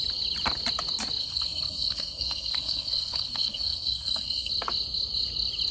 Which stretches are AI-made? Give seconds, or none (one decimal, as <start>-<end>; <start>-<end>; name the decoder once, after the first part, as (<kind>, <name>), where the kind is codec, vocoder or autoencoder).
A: 1.2-4.5 (codec, SNAC)